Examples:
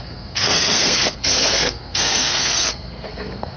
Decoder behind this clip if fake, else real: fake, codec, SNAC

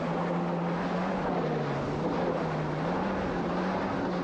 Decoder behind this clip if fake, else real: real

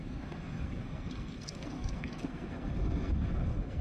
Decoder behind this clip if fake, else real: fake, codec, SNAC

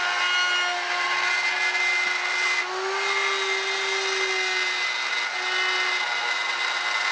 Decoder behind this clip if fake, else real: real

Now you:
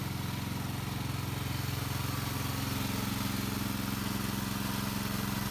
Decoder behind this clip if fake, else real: real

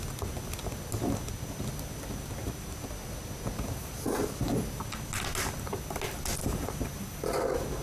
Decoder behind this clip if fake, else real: real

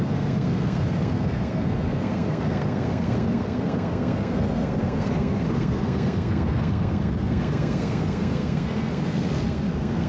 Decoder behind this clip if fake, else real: fake, codec, SNAC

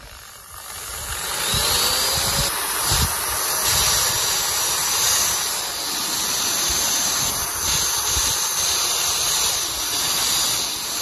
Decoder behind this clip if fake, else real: real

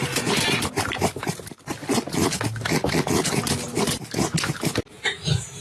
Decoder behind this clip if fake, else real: real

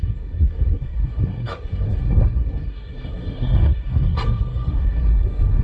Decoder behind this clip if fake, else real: fake, codec, SNAC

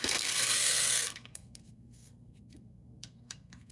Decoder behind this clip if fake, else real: fake, codec, SNAC